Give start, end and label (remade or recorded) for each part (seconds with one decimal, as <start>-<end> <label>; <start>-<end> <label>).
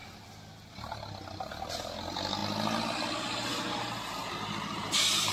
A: 0.0-5.3 recorded